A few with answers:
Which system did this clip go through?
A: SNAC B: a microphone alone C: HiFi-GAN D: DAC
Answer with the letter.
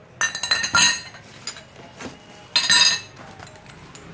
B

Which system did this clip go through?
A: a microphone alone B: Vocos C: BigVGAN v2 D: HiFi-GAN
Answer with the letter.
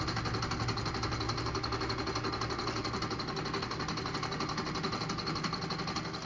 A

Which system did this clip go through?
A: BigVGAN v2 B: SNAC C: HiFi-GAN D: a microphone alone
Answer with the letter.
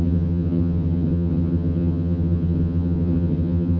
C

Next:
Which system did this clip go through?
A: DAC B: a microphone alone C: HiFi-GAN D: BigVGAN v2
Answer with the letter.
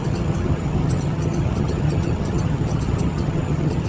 C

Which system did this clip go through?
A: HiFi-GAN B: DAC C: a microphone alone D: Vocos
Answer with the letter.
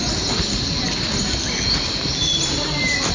C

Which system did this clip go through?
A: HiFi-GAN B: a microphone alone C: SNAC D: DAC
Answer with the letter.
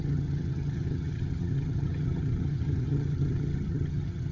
A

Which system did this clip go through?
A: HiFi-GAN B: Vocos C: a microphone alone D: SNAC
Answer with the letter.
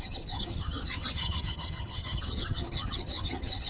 A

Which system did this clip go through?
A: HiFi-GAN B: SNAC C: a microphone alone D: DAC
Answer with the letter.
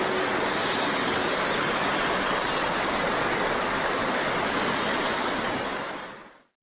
C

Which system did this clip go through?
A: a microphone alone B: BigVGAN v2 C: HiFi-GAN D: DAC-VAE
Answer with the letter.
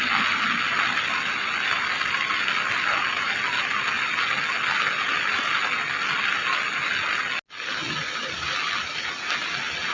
A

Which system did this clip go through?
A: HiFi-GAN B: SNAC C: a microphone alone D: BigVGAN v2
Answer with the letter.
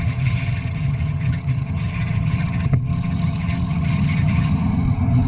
A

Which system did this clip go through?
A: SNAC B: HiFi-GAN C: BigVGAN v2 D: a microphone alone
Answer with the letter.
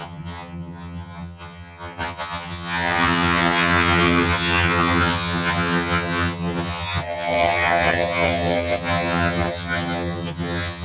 B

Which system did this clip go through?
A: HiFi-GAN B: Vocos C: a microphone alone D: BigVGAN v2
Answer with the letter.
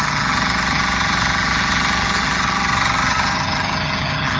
A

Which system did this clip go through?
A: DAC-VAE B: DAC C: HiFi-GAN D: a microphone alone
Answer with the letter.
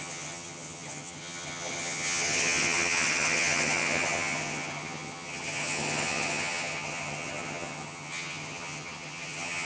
C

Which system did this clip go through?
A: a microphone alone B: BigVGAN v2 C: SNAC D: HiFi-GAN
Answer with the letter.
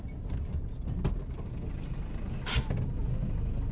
A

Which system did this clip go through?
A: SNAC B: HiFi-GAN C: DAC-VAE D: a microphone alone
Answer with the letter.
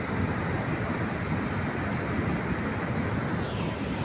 D